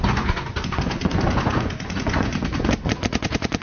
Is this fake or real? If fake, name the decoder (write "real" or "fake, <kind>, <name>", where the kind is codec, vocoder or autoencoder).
fake, vocoder, Vocos